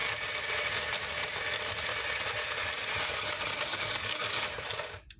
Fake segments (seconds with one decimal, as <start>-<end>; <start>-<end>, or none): 3.7-4.4